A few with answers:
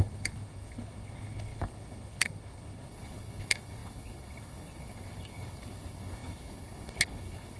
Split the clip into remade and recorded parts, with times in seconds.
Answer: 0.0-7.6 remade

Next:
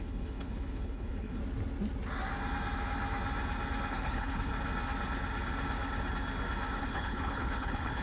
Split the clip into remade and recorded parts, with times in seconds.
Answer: 0.0-1.4 remade; 1.4-3.9 recorded; 3.9-4.5 remade; 4.5-6.8 recorded; 6.8-8.0 remade

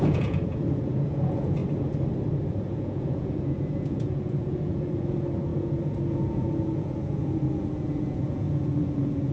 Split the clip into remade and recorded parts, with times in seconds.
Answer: 0.0-1.6 remade; 1.6-2.5 recorded; 2.5-9.3 remade

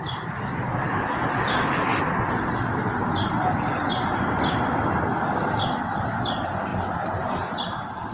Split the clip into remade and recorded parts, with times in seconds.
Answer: 0.0-8.1 recorded

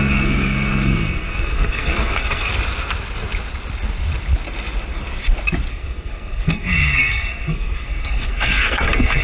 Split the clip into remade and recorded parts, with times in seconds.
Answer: 0.0-2.5 remade; 2.5-5.7 recorded; 5.7-9.2 remade

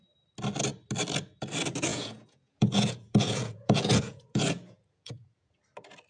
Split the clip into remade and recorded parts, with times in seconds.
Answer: 0.0-1.9 recorded; 1.9-5.6 remade; 5.6-6.1 recorded

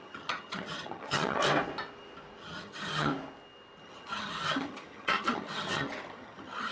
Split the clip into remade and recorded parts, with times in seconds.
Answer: 0.0-1.4 remade; 1.4-2.4 recorded; 2.4-3.1 remade; 3.1-3.8 recorded; 3.8-6.7 remade

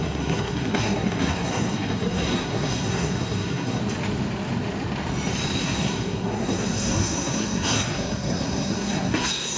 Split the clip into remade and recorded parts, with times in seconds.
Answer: 0.0-3.8 remade; 3.8-5.6 recorded; 5.6-9.6 remade